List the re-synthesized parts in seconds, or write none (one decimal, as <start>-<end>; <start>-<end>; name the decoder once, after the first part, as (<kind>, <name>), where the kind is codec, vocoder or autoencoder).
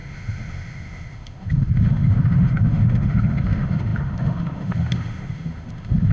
0.0-6.1 (autoencoder, DAC-VAE)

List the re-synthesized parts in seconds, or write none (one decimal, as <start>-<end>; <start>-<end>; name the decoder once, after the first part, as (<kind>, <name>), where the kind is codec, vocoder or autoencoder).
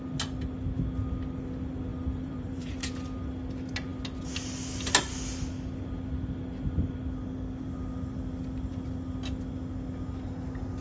1.9-2.9 (vocoder, BigVGAN v2)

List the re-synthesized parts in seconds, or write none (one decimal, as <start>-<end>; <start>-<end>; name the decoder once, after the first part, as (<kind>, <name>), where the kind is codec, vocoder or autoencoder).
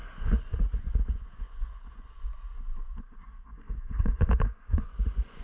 0.0-5.4 (vocoder, Vocos)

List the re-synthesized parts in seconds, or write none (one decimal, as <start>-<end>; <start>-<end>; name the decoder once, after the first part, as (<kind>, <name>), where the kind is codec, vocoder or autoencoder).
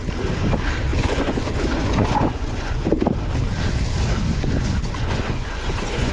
0.9-3.0 (vocoder, Vocos); 4.3-6.1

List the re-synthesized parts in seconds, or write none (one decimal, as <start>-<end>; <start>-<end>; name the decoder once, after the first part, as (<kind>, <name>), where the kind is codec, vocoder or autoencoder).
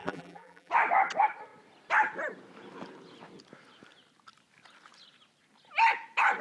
0.0-0.7 (vocoder, BigVGAN v2)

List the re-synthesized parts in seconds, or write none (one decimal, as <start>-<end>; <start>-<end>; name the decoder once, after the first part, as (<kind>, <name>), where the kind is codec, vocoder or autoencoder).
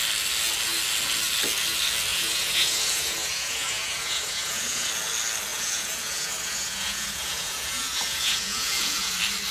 2.1-4.9 (vocoder, Vocos); 5.5-9.1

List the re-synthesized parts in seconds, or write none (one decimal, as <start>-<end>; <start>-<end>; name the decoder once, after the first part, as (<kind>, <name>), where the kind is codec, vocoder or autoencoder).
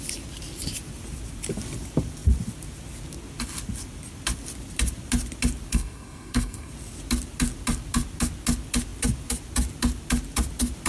5.7-6.7 (codec, SNAC)